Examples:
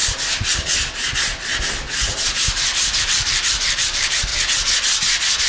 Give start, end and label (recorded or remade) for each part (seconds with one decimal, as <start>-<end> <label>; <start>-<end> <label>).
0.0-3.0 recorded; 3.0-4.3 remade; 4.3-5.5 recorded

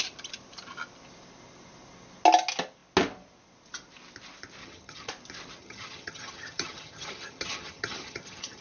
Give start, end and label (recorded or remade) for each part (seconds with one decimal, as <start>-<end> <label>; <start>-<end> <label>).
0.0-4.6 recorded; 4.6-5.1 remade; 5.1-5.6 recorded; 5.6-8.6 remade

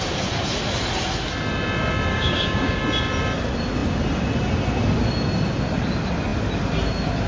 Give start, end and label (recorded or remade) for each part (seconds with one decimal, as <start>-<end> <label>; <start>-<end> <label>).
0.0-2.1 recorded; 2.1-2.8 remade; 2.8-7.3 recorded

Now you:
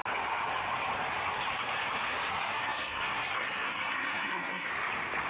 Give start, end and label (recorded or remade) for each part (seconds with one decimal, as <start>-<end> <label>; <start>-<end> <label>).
0.0-2.3 recorded; 2.3-4.7 remade; 4.7-5.3 recorded

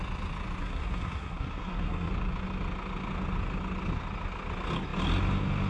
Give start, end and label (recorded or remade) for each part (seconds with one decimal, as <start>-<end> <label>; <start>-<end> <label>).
0.0-0.6 recorded; 0.6-2.1 remade; 2.1-5.7 recorded

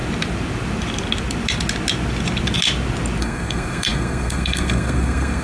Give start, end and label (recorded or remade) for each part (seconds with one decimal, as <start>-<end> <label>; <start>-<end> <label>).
0.0-3.2 recorded; 3.2-5.4 remade

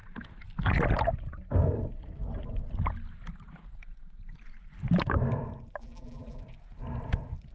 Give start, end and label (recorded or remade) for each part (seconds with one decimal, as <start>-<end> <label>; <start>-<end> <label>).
0.0-5.8 recorded; 5.8-6.4 remade; 6.4-7.5 recorded